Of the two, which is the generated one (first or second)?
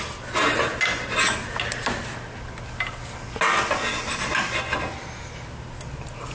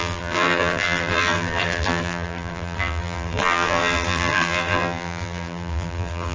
second